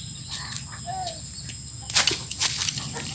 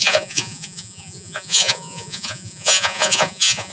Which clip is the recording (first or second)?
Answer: first